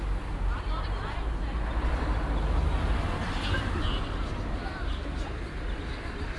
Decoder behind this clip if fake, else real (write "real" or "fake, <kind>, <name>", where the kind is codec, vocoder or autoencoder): real